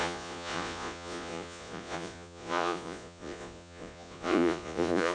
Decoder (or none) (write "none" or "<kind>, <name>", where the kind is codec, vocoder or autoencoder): vocoder, Vocos